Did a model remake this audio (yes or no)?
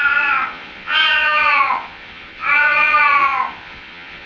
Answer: yes